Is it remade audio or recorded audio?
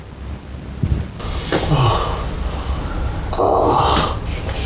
recorded